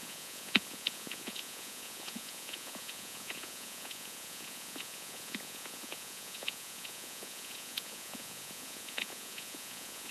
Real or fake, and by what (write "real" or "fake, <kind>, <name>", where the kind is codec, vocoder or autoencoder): fake, vocoder, Vocos